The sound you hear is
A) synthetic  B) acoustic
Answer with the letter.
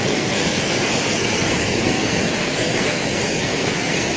A